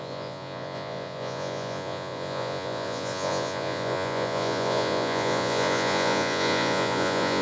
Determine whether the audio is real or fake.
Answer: fake